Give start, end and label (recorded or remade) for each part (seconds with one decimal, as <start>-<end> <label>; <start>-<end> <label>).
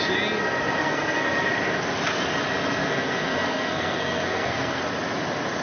0.0-0.8 recorded; 0.8-1.5 remade; 1.5-2.8 recorded; 2.8-4.8 remade; 4.8-5.6 recorded